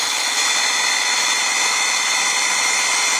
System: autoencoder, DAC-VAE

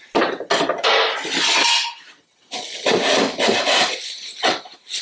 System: none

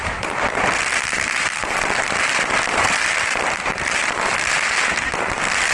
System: none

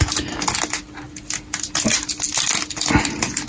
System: none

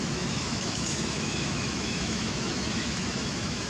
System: autoencoder, DAC-VAE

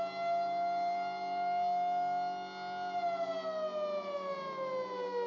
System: none